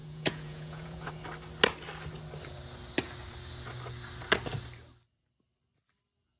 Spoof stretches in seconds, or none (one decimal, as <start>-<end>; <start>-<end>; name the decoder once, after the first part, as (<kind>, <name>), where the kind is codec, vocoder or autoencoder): 0.0-1.1 (vocoder, Vocos)